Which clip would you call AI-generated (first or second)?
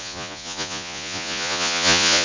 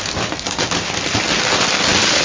first